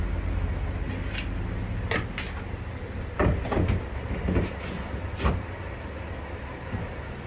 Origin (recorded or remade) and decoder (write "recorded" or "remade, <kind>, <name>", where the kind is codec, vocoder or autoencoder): recorded